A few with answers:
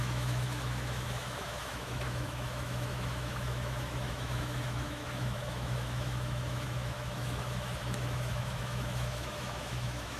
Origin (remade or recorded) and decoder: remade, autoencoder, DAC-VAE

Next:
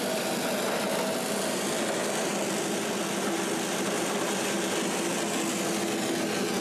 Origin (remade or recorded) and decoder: recorded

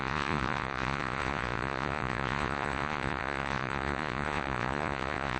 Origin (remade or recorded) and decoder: remade, vocoder, Vocos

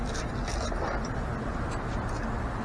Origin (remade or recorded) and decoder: recorded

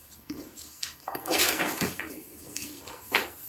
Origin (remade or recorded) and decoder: remade, codec, SNAC